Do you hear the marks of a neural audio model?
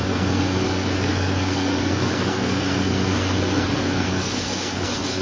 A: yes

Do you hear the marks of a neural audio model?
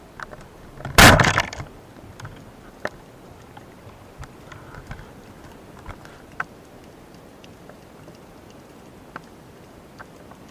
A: no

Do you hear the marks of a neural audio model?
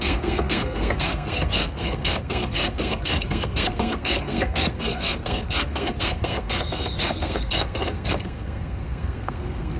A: yes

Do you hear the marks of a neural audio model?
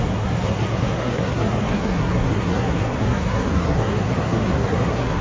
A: yes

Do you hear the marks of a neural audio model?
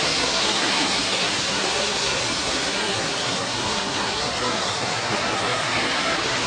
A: yes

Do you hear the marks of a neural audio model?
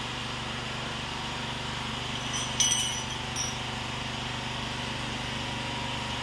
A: no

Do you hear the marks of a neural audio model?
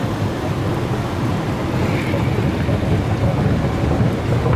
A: no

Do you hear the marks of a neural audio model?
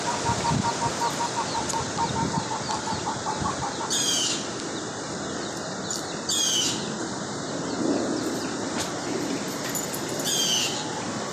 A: no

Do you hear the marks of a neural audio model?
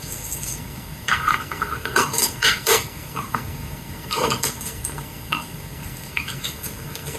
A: yes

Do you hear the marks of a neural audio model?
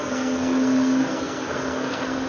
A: yes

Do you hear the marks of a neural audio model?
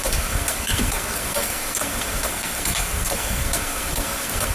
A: yes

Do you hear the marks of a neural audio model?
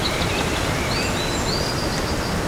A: no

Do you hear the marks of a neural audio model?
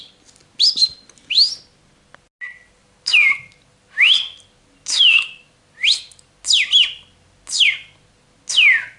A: no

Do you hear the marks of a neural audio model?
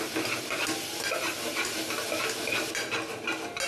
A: no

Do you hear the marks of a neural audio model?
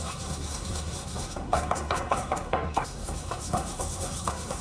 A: yes